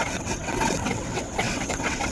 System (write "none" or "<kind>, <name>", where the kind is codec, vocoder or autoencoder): vocoder, WaveNeXt